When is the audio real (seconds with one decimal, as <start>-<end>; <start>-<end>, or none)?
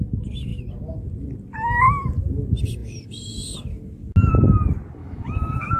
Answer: 0.0-5.0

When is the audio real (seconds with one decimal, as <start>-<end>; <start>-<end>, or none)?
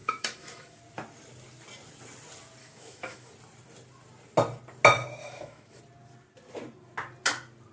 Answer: 0.8-2.6; 3.3-5.2; 5.8-7.7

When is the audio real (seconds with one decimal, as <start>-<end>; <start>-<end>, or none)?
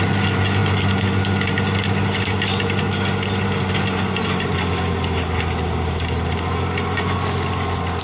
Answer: 0.0-8.0